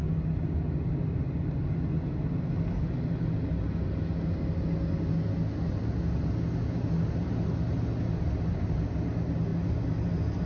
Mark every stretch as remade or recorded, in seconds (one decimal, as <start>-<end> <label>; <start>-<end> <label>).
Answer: 0.0-0.7 remade; 0.7-10.5 recorded